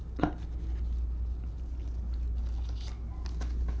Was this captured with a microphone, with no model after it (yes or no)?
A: yes